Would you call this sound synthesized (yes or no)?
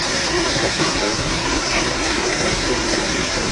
yes